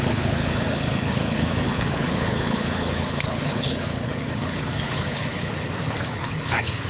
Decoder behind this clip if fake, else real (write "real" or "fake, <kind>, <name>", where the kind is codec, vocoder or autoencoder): fake, codec, HILCodec